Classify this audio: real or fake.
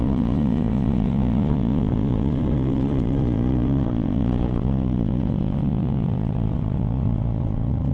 fake